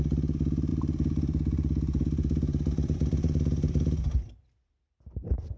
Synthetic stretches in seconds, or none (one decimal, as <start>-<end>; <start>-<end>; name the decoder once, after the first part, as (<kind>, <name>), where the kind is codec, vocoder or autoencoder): 0.7-4.1 (vocoder, BigVGAN v2)